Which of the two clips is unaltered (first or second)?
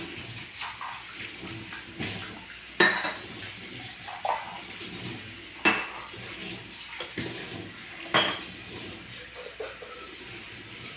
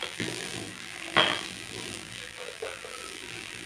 first